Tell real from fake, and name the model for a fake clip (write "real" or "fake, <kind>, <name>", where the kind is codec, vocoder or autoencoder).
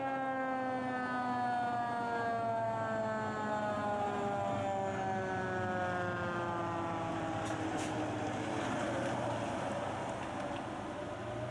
real